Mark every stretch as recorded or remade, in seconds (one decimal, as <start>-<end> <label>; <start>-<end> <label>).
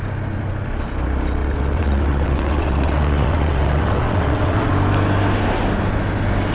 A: 0.0-1.4 recorded; 1.4-4.7 remade; 4.7-6.5 recorded